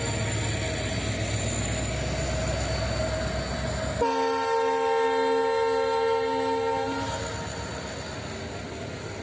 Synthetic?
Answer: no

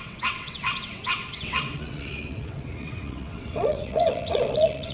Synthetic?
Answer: yes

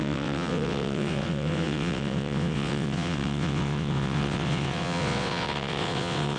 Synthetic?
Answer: yes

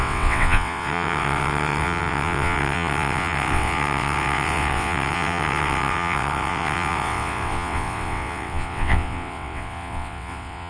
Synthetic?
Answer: yes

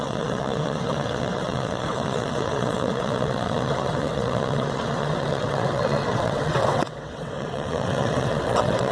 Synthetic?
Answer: yes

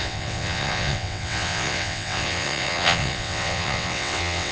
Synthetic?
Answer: yes